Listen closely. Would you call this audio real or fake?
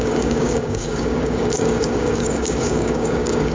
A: fake